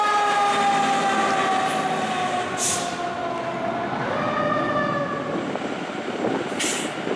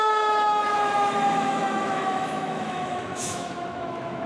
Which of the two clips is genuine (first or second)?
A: first